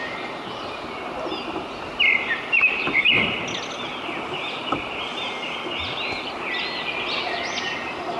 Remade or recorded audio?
recorded